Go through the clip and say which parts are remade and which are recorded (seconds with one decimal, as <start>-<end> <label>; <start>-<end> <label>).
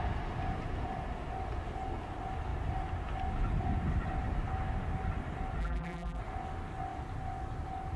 0.0-5.6 recorded; 5.6-6.2 remade; 6.2-8.0 recorded